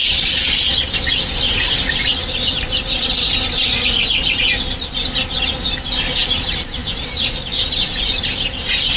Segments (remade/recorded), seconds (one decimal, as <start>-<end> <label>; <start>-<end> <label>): 0.0-9.0 recorded